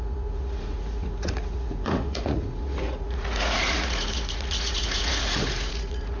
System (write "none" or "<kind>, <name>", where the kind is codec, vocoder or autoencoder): vocoder, Vocos